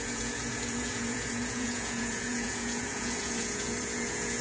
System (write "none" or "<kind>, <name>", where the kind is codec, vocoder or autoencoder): vocoder, Vocos